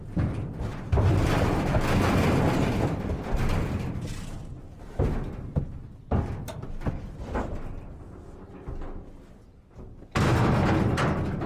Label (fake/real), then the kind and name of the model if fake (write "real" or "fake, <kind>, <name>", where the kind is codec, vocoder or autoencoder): real